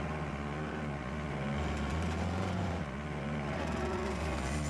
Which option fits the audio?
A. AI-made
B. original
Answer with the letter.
A